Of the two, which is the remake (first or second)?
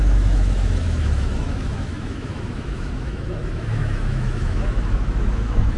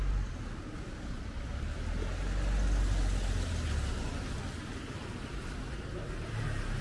first